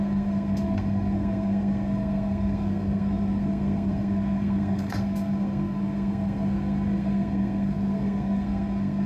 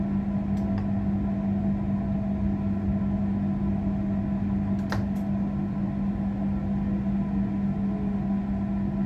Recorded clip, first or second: second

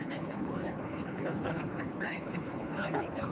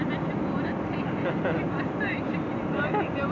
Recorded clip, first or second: second